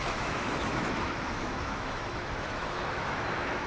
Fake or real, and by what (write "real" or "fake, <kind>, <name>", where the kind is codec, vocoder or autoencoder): fake, autoencoder, DAC-VAE